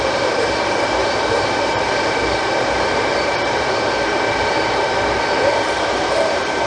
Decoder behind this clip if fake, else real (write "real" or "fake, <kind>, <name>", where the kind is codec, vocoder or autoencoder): fake, vocoder, BigVGAN v2